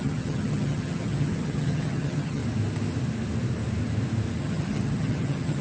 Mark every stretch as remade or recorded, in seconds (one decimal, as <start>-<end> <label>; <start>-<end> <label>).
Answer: 0.0-2.4 remade; 2.4-4.4 recorded; 4.4-5.6 remade